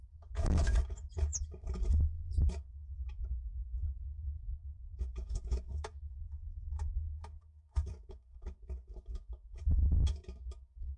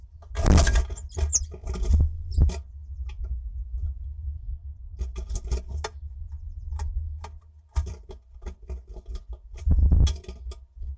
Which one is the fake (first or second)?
first